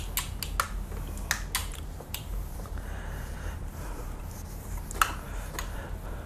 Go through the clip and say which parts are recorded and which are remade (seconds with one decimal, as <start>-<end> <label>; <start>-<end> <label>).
0.0-1.6 recorded; 1.6-4.2 remade; 4.2-6.3 recorded